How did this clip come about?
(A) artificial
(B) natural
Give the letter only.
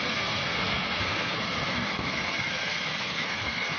A